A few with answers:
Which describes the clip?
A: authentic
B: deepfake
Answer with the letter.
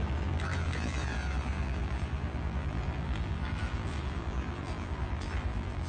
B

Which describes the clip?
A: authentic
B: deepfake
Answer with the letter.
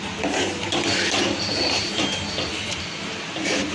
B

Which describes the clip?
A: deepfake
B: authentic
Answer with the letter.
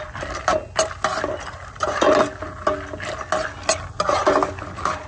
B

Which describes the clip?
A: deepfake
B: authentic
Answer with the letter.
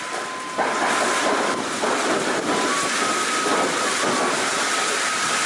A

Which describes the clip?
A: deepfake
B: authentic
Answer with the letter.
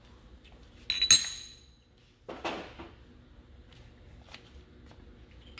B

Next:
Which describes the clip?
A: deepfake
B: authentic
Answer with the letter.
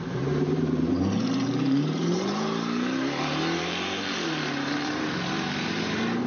A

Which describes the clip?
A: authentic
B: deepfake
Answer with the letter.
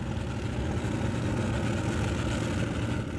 A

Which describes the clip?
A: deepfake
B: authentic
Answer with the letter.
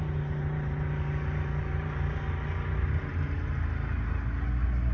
B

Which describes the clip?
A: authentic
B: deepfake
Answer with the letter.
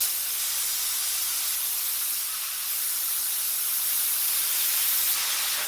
A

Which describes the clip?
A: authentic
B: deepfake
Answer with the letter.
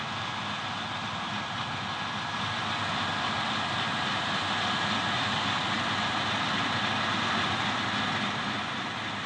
A